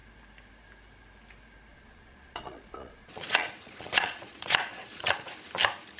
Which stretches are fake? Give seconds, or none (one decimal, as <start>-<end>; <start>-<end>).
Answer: 1.7-5.3